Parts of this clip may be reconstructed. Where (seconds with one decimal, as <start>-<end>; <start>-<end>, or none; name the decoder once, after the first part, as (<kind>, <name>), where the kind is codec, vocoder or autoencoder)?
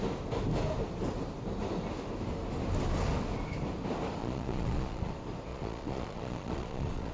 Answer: 4.2-5.1 (vocoder, Vocos); 5.5-7.1